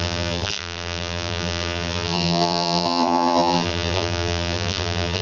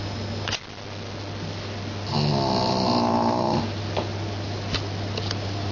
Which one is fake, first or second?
first